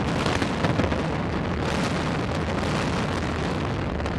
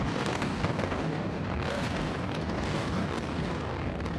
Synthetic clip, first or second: second